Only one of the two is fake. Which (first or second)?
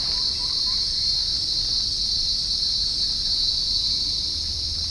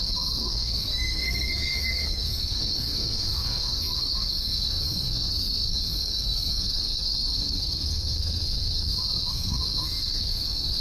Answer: second